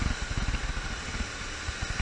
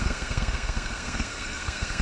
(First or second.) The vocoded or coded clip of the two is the second